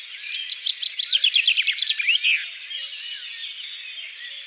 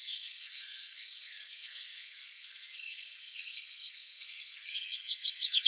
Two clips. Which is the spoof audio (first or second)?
second